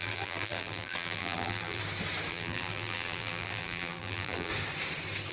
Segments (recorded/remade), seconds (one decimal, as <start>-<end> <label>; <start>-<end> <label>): 0.0-1.8 remade; 1.8-2.3 recorded; 2.3-4.5 remade; 4.5-5.3 recorded